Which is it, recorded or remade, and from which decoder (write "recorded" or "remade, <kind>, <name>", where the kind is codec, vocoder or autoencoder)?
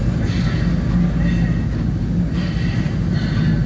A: recorded